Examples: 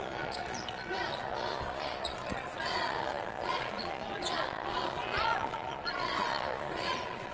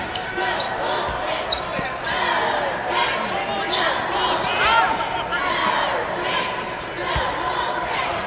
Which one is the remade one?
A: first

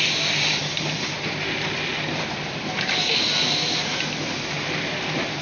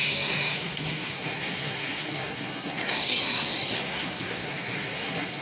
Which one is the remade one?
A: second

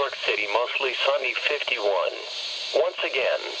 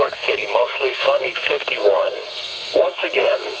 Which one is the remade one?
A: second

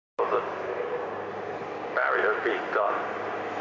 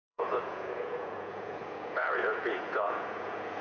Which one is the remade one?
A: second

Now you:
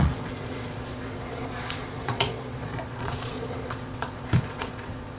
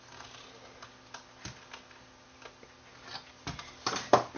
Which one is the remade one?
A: first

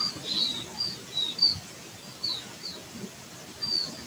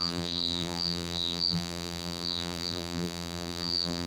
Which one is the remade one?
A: second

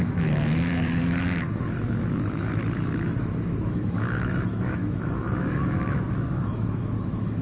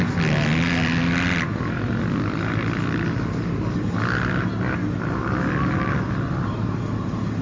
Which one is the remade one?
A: first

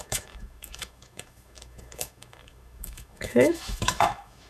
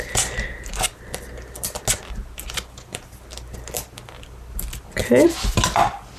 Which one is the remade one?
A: first